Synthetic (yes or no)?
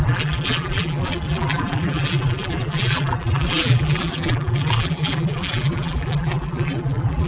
yes